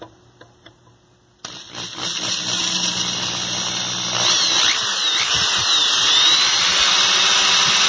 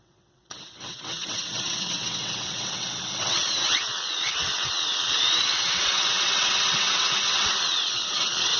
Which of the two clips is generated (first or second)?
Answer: second